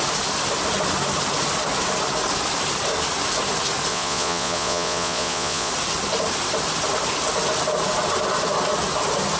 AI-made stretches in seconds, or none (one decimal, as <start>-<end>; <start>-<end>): 3.9-5.7